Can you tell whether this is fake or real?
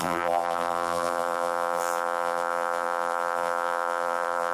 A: fake